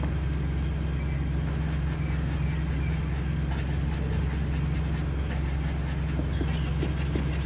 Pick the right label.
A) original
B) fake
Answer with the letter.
A